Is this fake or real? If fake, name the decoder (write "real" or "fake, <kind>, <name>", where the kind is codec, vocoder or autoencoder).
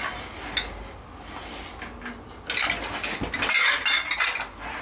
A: real